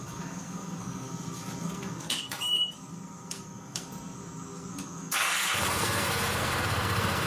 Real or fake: fake